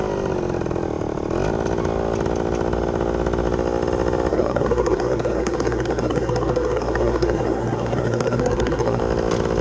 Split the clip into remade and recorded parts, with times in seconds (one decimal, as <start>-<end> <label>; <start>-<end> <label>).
0.0-4.3 recorded; 4.3-9.0 remade; 9.0-9.6 recorded